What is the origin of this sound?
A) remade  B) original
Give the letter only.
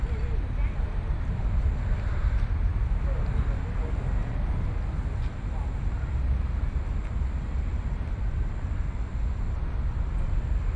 B